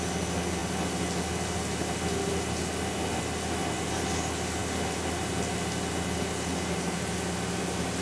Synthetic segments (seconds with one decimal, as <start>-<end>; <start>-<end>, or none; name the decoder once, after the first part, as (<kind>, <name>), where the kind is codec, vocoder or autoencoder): none